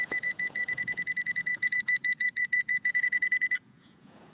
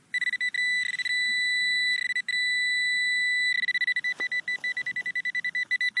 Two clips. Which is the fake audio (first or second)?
first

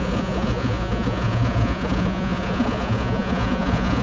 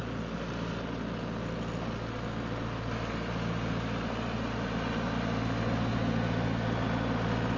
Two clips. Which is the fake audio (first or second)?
first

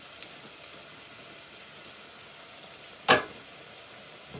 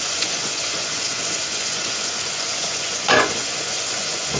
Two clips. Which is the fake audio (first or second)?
second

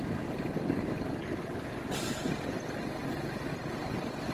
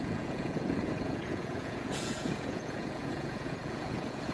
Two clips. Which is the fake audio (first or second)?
second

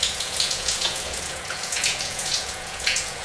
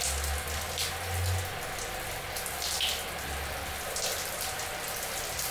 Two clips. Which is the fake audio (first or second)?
first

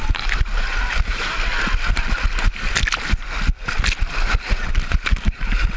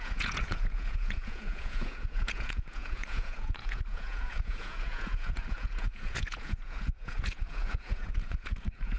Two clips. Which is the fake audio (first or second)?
second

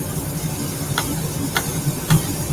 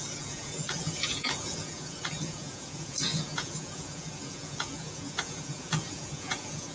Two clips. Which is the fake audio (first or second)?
second